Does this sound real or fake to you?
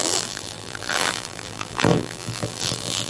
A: fake